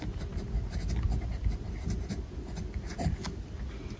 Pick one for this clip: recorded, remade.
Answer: recorded